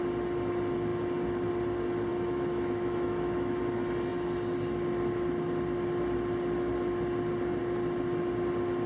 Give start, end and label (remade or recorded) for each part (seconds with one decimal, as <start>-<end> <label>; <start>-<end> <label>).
0.0-2.1 recorded; 2.1-3.6 remade; 3.6-8.9 recorded